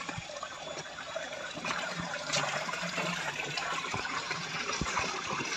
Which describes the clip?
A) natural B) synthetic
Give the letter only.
B